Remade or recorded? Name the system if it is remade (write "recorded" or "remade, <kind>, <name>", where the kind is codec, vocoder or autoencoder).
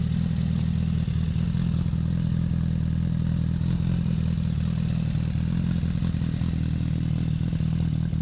recorded